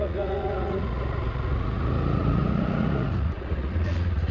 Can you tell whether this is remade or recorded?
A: remade